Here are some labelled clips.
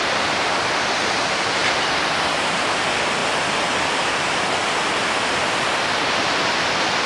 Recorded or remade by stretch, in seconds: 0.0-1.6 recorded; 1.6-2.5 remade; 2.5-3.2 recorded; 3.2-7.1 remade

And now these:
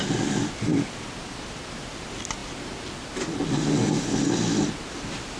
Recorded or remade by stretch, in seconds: 0.0-2.4 remade; 2.4-5.4 recorded

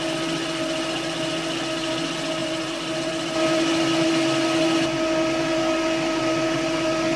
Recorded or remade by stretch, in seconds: 0.0-2.4 recorded; 2.4-3.1 remade; 3.1-7.2 recorded

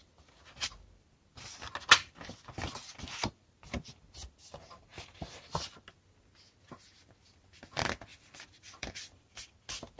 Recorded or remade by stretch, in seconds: 0.0-8.1 recorded; 8.1-9.5 remade; 9.5-10.0 recorded

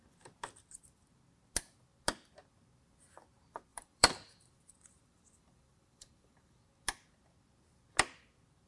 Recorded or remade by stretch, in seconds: 0.0-3.7 recorded; 3.7-6.6 remade; 6.6-8.7 recorded